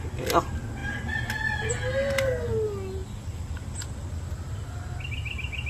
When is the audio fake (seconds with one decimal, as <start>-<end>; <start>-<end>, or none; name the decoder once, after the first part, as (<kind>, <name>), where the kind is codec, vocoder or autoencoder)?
3.0-4.8 (vocoder, BigVGAN v2)